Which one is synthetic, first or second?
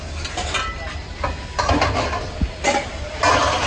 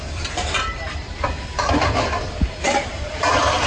second